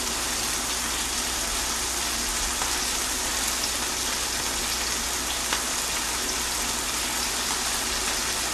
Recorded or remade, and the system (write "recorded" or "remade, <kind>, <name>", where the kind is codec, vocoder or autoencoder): recorded